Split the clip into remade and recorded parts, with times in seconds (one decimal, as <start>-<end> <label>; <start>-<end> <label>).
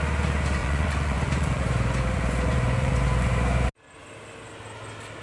0.0-0.6 recorded; 0.6-3.7 remade; 3.7-5.2 recorded